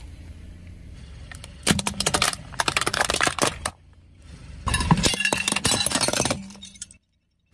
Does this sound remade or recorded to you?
remade